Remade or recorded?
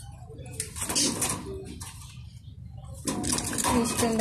recorded